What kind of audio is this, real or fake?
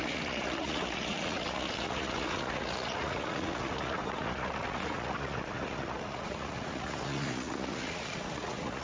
fake